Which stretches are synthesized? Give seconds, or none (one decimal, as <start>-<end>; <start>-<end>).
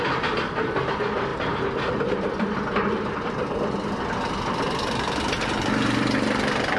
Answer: none